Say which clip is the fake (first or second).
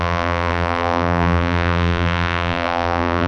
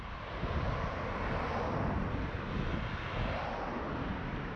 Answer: first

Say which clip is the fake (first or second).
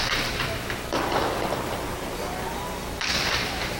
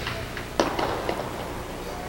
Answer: first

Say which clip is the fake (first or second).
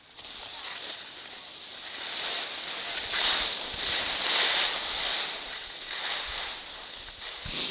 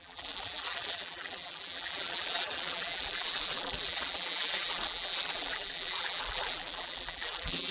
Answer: second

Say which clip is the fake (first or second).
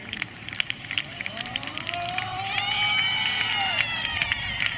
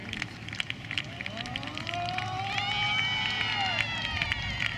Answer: first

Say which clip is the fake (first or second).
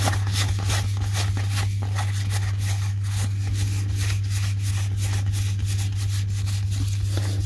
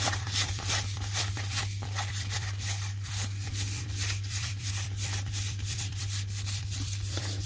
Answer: second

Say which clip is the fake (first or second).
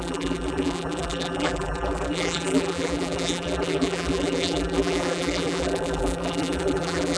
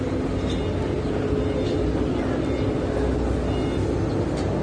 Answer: first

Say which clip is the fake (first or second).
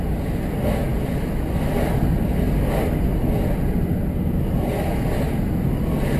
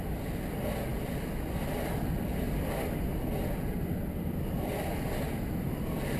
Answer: second